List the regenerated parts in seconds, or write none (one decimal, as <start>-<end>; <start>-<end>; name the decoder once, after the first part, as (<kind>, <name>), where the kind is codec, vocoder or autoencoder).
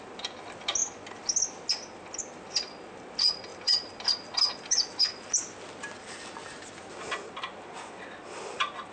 none